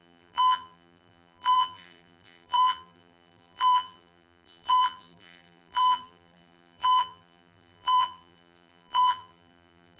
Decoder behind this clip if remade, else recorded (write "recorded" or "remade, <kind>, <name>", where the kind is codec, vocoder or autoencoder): remade, vocoder, BigVGAN v2